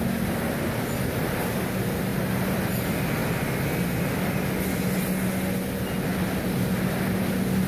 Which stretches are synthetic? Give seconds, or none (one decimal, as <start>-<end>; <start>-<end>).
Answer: none